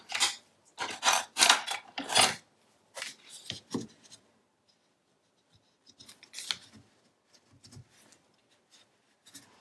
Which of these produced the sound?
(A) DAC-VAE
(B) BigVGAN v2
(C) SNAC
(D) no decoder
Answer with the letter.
D